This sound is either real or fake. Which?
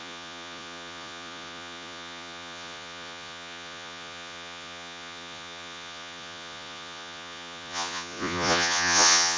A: fake